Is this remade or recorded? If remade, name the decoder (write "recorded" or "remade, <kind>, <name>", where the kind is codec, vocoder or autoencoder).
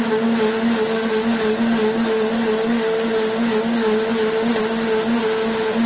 recorded